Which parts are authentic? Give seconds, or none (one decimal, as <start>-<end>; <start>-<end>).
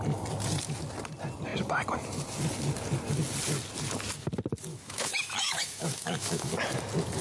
0.0-4.7; 6.5-7.2